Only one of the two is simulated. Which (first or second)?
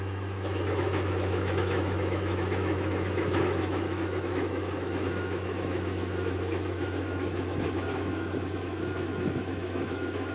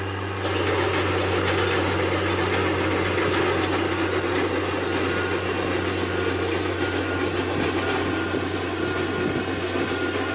first